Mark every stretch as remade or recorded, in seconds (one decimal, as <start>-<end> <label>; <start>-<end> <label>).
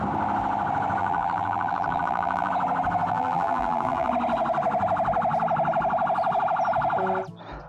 0.0-1.0 recorded; 1.0-2.5 remade; 2.5-3.1 recorded; 3.1-4.1 remade; 4.1-7.7 recorded